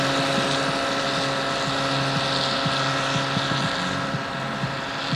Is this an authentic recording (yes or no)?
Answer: yes